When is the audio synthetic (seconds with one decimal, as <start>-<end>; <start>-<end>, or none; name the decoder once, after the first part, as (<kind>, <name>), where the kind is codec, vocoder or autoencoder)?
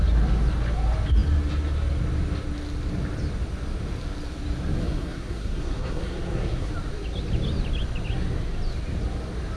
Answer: 4.8-6.7 (codec, SNAC)